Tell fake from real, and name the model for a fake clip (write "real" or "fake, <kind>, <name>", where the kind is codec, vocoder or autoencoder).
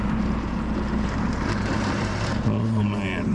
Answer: fake, vocoder, BigVGAN v2